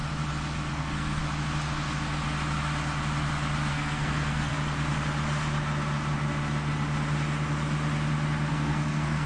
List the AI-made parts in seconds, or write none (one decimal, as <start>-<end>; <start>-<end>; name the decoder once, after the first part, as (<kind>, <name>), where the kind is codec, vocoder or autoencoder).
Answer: 0.7-1.2 (codec, SNAC); 3.7-4.5; 8.5-9.3